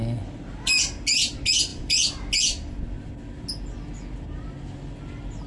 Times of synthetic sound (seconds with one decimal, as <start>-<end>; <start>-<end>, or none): none